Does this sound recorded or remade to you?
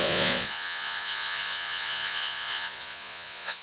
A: remade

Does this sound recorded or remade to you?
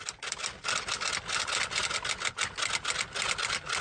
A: recorded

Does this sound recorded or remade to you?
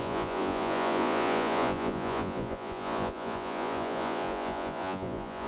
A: remade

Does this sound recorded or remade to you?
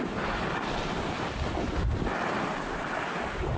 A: recorded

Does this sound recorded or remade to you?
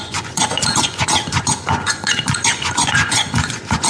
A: remade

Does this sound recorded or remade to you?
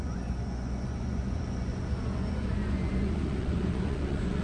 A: remade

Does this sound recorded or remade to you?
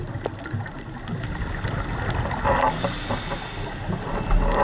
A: recorded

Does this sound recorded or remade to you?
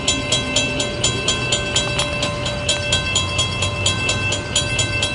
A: recorded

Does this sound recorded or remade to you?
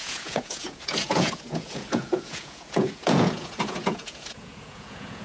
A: remade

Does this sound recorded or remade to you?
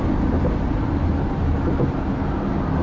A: recorded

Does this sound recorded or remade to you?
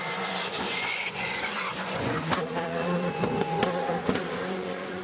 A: remade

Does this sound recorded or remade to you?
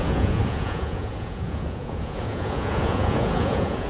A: remade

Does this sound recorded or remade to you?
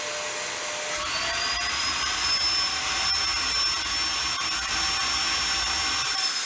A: recorded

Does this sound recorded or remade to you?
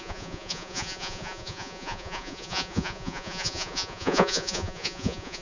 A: remade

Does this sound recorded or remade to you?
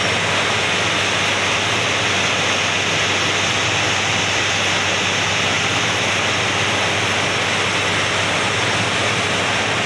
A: recorded